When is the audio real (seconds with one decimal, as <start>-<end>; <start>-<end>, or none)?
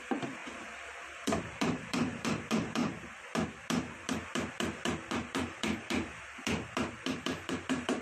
2.8-5.1; 6.1-6.9